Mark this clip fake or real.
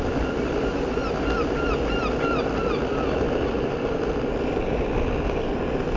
real